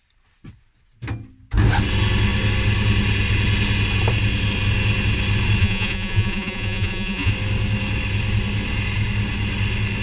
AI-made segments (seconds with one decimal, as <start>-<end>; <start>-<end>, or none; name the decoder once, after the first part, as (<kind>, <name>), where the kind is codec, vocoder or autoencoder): 5.6-7.3 (vocoder, Vocos)